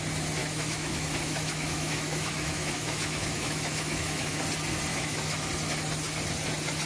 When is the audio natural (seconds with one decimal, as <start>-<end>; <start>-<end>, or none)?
0.0-0.4; 4.4-4.9; 5.5-6.9